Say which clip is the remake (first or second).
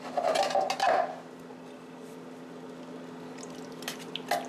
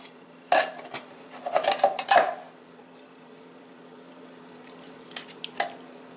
second